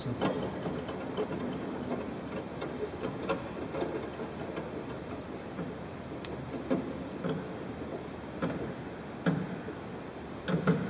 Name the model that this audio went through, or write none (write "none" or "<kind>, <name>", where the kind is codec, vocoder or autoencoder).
none